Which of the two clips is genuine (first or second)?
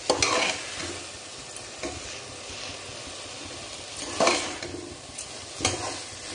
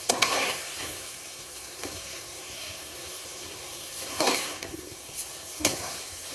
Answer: first